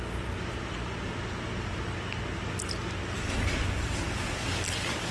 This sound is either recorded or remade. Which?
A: recorded